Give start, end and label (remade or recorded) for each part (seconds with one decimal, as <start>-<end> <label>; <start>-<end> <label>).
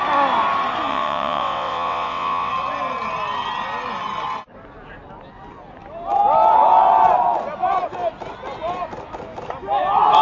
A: 0.0-0.9 recorded; 0.9-2.5 remade; 2.5-10.2 recorded